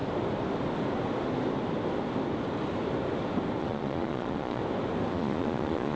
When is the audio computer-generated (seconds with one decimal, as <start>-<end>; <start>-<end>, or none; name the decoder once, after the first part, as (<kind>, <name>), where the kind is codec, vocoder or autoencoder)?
3.6-4.6 (vocoder, Vocos); 5.1-6.0